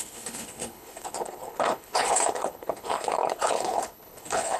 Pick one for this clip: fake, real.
fake